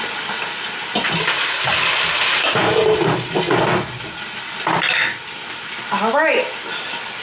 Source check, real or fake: real